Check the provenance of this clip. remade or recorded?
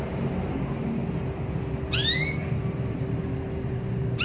recorded